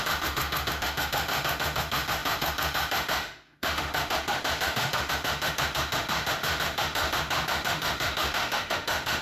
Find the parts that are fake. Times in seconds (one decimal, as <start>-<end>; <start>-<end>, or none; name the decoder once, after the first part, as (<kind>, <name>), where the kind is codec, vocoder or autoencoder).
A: 0.0-9.2 (autoencoder, DAC-VAE)